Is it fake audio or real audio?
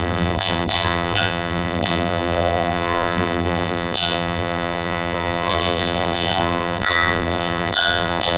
fake